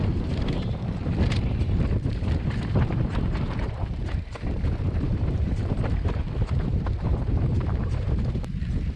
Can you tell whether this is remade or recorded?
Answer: remade